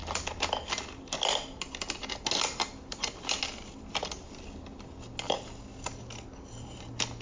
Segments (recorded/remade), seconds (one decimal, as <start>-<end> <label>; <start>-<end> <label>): 0.0-7.2 recorded